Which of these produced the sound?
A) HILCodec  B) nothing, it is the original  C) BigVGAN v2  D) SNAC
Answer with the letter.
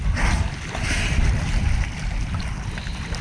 B